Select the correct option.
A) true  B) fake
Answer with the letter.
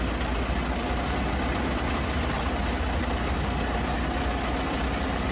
A